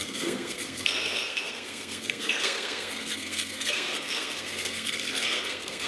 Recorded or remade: remade